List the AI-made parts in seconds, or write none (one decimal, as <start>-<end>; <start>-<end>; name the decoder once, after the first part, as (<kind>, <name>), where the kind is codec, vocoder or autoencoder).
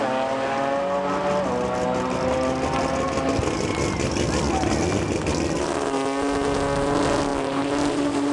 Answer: none